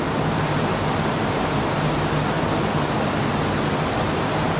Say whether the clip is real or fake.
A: real